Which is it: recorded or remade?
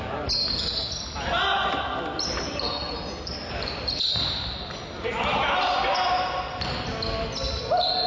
recorded